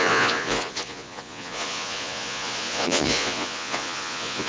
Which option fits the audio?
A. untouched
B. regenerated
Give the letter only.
B